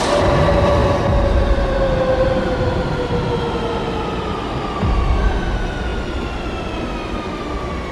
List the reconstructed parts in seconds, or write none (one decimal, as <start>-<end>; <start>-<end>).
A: none